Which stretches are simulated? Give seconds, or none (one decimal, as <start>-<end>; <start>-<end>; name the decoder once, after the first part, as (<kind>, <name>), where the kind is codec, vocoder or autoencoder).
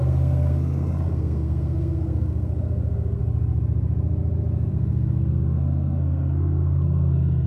0.0-3.2 (codec, SNAC); 4.7-7.5